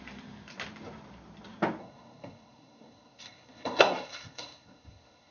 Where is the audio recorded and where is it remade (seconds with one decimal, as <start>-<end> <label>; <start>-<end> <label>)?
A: 0.0-1.8 recorded; 1.8-5.3 remade